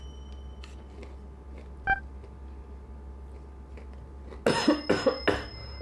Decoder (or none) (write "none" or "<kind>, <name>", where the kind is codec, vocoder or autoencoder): none